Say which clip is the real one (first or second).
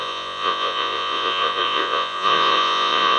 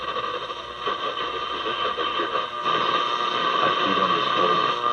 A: second